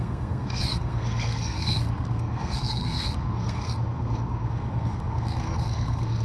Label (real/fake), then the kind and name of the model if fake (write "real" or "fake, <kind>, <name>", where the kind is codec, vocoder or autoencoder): fake, codec, SNAC